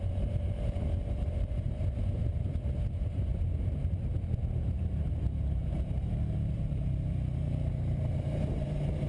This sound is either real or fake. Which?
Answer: fake